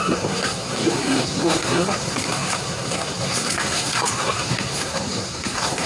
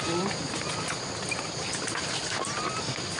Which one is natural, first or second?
second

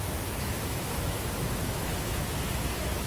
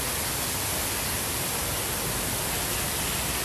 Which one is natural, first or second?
second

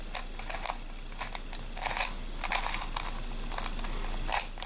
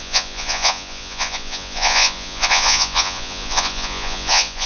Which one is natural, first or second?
first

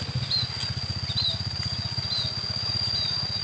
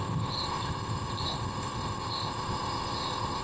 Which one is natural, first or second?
first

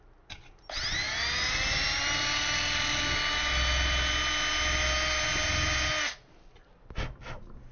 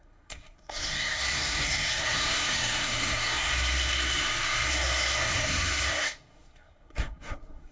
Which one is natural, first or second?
first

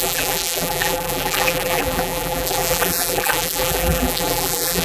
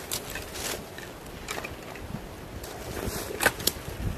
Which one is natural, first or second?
second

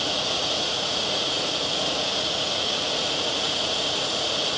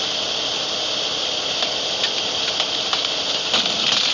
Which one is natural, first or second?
second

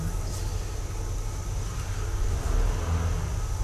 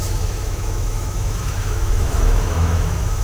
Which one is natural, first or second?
first